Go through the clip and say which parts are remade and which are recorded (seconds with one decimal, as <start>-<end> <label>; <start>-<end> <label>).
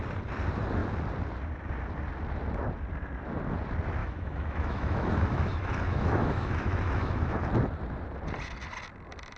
0.0-4.0 recorded; 4.0-7.4 remade; 7.4-9.4 recorded